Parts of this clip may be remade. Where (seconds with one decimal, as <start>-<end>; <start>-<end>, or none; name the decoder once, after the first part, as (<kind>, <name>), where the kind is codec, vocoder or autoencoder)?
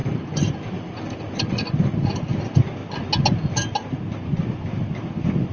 0.0-2.1 (vocoder, BigVGAN v2)